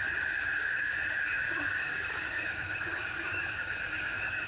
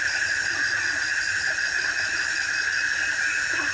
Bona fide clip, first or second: second